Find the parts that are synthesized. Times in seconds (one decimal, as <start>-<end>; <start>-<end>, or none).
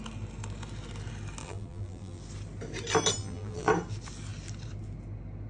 1.4-2.2; 3.2-3.7